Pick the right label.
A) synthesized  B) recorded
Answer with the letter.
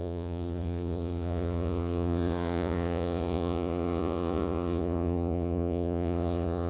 A